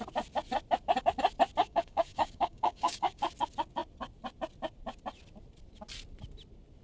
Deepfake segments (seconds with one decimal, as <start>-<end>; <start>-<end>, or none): 1.6-3.2